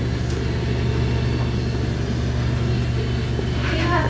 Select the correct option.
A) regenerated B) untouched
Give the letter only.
B